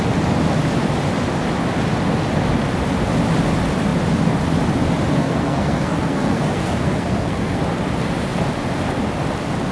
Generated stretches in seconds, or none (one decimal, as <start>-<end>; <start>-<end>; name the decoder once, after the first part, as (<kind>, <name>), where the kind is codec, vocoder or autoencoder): 5.2-7.6 (codec, SNAC)